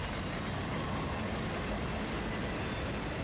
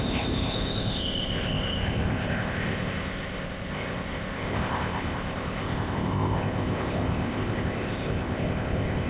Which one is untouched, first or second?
first